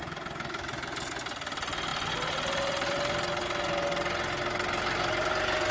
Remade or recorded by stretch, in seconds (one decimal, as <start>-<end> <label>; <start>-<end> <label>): 0.0-5.7 recorded